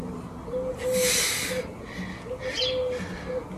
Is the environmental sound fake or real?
real